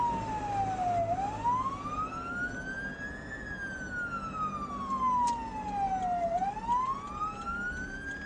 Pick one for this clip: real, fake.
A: real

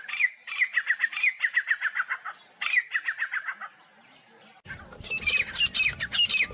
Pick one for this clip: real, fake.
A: real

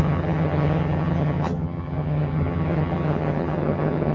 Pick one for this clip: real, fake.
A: fake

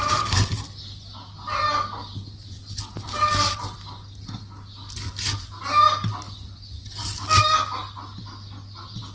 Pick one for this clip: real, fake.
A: real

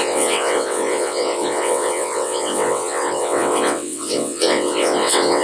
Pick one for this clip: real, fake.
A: fake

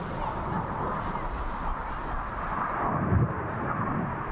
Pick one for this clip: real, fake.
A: real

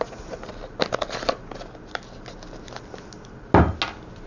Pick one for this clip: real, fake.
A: real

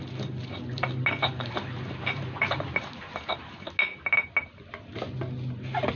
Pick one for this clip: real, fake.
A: real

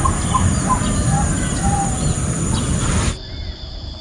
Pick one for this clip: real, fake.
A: real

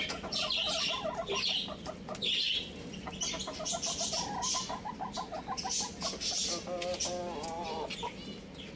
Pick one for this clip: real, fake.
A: real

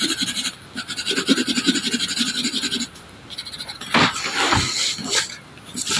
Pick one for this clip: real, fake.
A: real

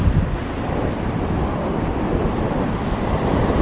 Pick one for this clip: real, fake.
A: real